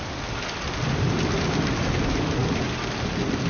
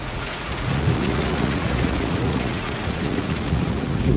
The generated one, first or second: second